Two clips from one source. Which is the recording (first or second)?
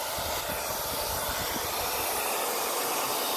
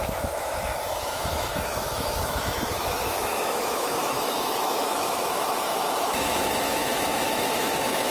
first